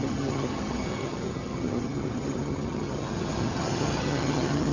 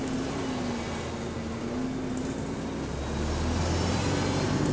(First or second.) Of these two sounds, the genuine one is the second